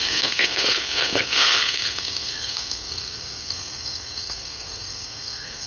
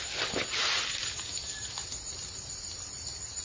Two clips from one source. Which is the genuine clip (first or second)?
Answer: second